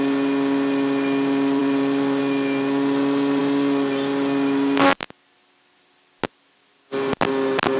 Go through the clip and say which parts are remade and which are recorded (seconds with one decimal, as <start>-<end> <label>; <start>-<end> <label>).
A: 0.0-1.6 recorded; 1.6-2.2 remade; 2.2-7.8 recorded